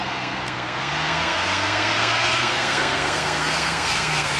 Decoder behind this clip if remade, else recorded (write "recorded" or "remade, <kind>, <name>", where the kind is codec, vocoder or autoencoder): remade, codec, SNAC